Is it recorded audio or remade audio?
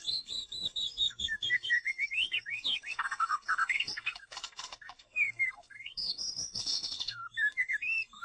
remade